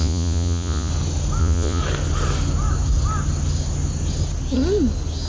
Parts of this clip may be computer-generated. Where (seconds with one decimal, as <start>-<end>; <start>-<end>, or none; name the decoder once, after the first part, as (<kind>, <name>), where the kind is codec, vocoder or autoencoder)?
0.0-0.9 (vocoder, Vocos); 1.4-1.8